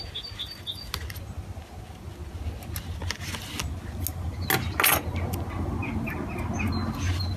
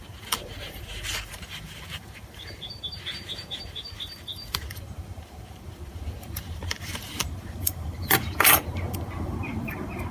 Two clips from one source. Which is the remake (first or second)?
second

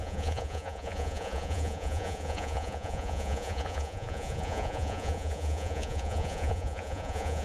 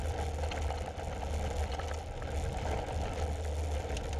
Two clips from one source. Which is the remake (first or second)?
first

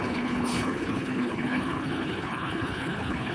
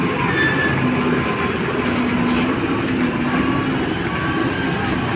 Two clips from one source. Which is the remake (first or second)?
first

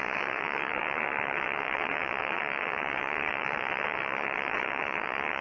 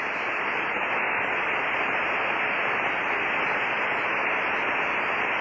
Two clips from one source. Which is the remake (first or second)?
first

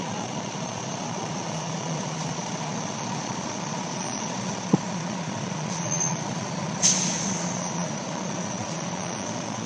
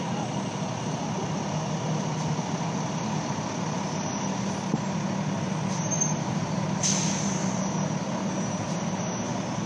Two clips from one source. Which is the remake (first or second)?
first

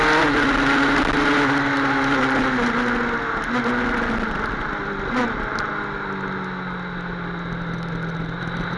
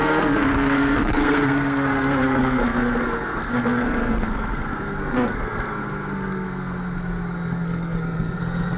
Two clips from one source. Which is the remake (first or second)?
second